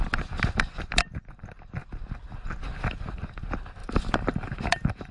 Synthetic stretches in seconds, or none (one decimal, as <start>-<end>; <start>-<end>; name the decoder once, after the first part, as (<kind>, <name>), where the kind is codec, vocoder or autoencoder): 3.8-5.1 (vocoder, BigVGAN v2)